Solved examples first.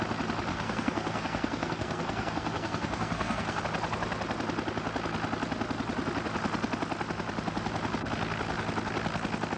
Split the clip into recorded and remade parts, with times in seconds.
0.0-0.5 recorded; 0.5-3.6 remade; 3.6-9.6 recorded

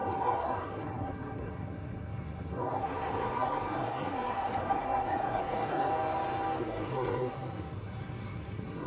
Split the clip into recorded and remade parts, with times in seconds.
0.0-5.9 remade; 5.9-6.6 recorded; 6.6-8.9 remade

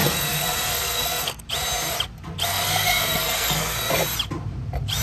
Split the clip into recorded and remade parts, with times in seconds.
0.0-1.4 remade; 1.4-2.5 recorded; 2.5-3.9 remade; 3.9-5.0 recorded

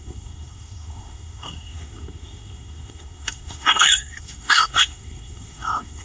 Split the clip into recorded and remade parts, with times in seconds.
0.0-6.0 remade

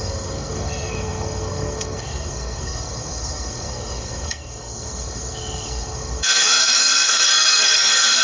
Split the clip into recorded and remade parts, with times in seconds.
0.0-8.2 remade

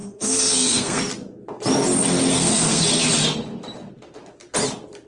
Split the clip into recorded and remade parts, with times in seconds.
0.0-1.0 remade; 1.0-2.3 recorded; 2.3-2.8 remade; 2.8-5.1 recorded

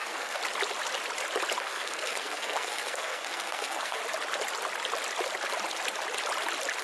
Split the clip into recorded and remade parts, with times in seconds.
0.0-0.4 remade; 0.4-1.6 recorded; 1.6-4.0 remade; 4.0-6.8 recorded

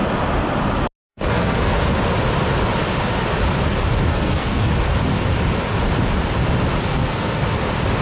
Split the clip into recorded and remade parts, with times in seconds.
0.0-1.1 recorded; 1.1-1.8 remade; 1.8-4.1 recorded; 4.1-4.7 remade; 4.7-6.8 recorded; 6.8-7.4 remade; 7.4-8.0 recorded